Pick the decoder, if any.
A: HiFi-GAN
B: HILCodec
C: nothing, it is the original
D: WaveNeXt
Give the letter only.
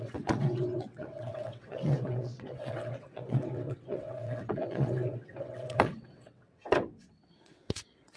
D